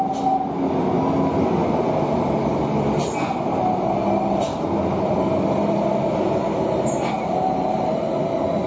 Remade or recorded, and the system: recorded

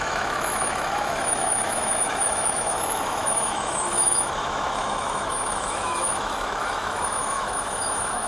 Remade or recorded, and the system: remade, autoencoder, DAC-VAE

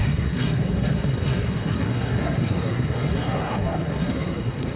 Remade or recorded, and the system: remade, codec, SNAC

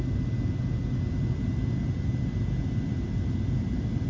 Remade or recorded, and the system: recorded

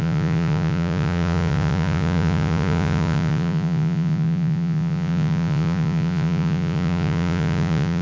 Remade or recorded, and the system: remade, vocoder, Vocos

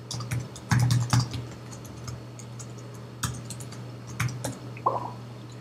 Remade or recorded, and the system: recorded